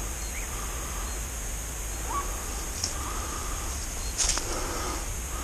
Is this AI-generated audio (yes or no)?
no